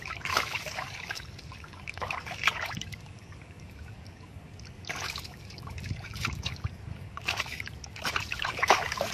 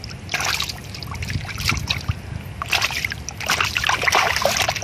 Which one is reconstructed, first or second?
first